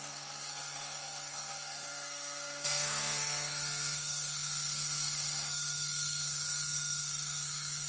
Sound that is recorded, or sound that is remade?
remade